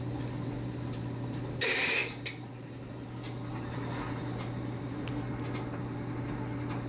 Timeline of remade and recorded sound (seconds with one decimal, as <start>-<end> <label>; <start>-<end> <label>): 0.0-6.9 recorded